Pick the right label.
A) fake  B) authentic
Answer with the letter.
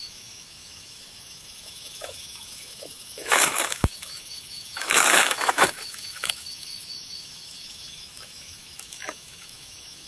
A